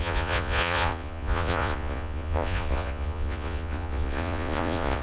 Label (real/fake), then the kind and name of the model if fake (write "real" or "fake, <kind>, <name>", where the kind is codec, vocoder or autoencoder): fake, vocoder, Vocos